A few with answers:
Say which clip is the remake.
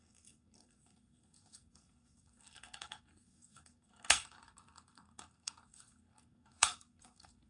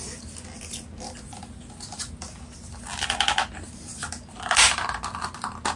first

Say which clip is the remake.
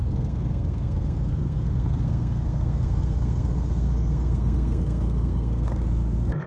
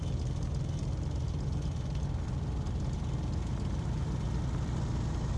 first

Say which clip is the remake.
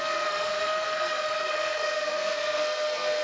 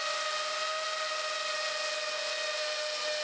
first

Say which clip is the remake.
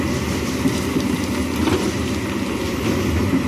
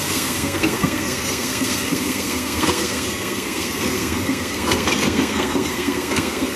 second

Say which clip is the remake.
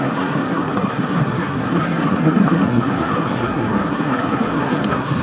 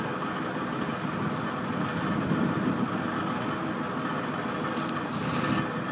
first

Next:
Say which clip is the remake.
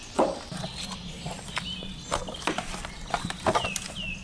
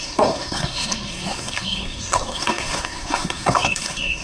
second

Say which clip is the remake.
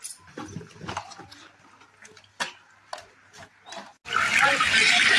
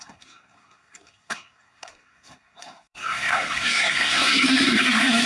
second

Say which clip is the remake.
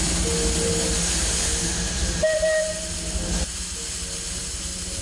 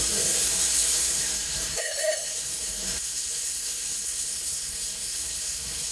second